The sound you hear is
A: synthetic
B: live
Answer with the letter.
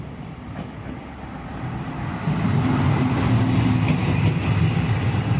B